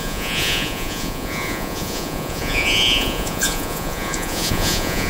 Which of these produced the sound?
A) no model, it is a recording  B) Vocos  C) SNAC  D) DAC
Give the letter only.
B